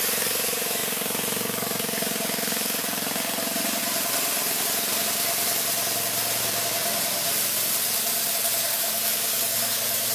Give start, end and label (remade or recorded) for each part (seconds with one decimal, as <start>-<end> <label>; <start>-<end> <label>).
0.0-3.8 remade; 3.8-8.3 recorded; 8.3-10.1 remade